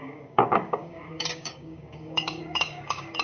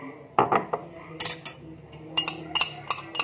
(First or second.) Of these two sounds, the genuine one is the second